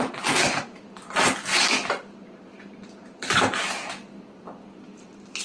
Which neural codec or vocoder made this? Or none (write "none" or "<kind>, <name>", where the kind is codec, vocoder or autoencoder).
none